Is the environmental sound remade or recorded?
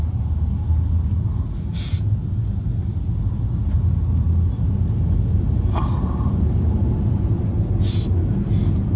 recorded